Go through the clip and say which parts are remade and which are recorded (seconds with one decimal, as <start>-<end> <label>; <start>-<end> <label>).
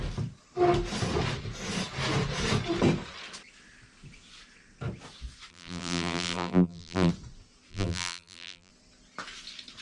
0.0-5.5 recorded; 5.5-7.1 remade; 7.1-7.7 recorded; 7.7-8.7 remade; 8.7-9.8 recorded